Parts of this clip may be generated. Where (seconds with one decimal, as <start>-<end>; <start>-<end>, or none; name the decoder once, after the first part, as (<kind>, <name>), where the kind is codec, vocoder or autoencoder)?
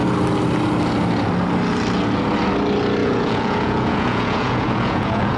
3.0-5.4 (vocoder, Vocos)